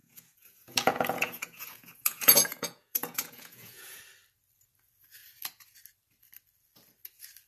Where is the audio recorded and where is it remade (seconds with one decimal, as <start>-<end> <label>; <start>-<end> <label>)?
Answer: 0.0-4.0 remade; 4.0-7.5 recorded